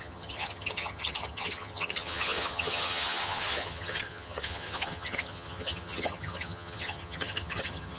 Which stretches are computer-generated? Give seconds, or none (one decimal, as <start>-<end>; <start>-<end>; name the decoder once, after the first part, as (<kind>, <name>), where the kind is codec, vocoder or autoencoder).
0.0-8.0 (vocoder, HiFi-GAN)